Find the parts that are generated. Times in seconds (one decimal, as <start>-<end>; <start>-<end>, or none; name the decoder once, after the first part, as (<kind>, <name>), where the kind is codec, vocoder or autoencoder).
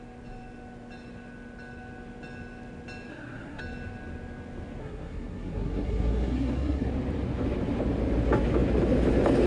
3.1-3.6 (codec, SNAC); 4.8-6.9